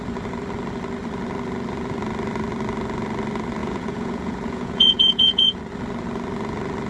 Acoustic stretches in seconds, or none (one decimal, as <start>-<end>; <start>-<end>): 0.0-3.6; 5.6-6.9